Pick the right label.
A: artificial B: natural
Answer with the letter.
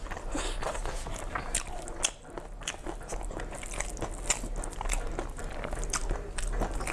B